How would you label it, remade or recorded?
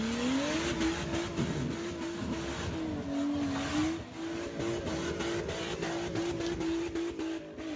recorded